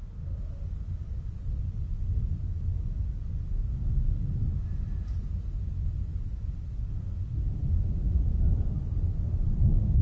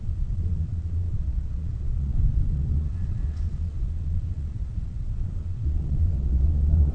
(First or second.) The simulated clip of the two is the second